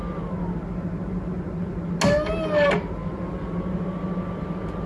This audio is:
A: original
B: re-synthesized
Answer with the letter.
A